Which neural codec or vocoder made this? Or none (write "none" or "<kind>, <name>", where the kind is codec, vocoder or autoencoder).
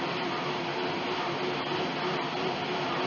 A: none